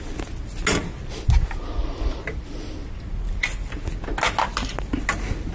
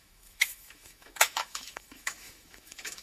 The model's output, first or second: second